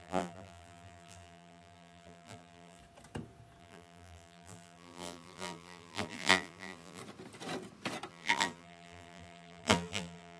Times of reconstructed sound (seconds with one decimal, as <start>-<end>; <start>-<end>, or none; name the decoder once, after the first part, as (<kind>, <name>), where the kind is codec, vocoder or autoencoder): 0.0-2.8 (vocoder, BigVGAN v2); 3.6-7.0; 8.1-10.4